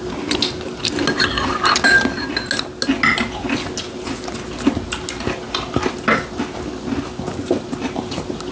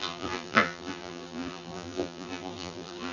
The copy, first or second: second